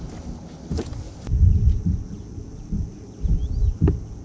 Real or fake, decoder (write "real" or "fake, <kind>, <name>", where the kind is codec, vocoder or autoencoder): real